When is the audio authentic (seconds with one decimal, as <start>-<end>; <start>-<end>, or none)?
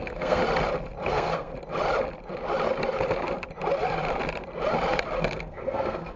0.4-1.1; 1.5-5.2